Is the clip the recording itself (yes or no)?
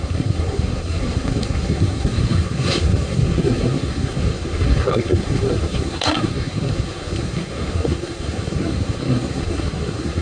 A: no